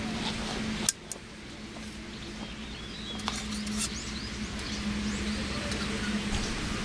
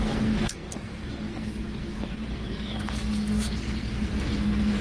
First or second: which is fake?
second